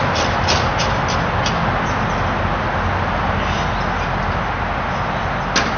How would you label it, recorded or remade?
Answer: recorded